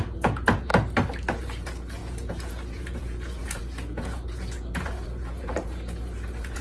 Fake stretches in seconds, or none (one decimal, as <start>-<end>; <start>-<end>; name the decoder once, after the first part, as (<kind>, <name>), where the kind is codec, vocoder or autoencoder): 0.0-0.7 (vocoder, Vocos); 1.4-6.6